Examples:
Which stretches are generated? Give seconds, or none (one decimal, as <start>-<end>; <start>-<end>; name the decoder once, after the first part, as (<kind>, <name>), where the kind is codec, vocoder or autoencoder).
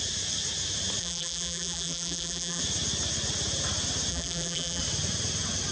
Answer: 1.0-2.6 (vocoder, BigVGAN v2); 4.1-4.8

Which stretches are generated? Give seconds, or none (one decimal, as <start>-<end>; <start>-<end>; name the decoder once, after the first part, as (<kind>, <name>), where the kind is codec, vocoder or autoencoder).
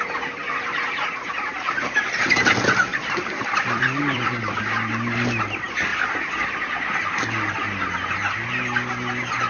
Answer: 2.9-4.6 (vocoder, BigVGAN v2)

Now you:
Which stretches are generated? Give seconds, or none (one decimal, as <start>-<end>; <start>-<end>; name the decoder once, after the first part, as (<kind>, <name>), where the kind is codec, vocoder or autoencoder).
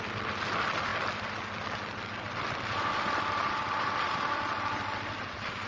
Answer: 0.0-0.9 (vocoder, BigVGAN v2); 2.2-5.7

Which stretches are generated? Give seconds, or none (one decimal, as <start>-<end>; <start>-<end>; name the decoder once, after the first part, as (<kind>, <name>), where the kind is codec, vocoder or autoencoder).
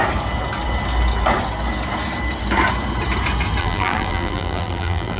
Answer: 3.6-5.2 (vocoder, BigVGAN v2)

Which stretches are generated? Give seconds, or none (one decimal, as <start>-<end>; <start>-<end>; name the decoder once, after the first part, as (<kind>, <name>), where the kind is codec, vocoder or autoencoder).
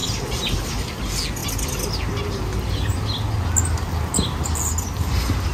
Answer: none